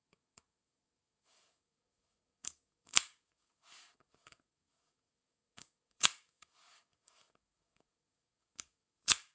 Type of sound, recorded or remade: remade